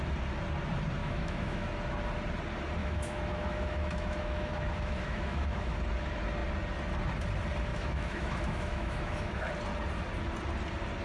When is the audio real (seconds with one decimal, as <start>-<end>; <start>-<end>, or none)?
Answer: 0.0-1.0; 1.7-2.8; 5.8-7.7; 9.5-11.0